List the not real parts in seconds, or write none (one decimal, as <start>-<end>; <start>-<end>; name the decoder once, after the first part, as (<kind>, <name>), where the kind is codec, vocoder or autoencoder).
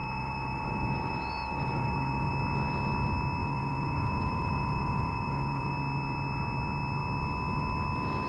0.0-2.3 (vocoder, Vocos); 3.4-5.7